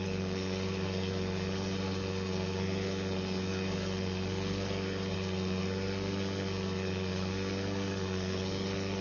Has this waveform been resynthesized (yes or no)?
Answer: yes